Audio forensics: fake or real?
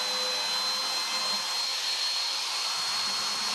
real